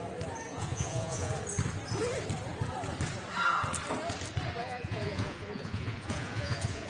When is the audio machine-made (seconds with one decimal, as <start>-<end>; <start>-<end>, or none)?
0.5-1.3; 4.6-6.9